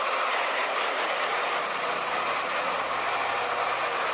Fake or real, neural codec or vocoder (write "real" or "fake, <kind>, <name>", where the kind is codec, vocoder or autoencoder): real